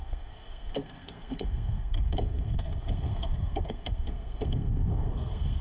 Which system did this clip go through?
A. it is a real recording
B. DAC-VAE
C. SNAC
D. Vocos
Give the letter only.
C